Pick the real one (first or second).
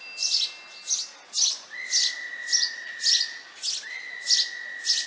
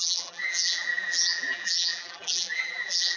first